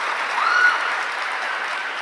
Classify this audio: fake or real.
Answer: fake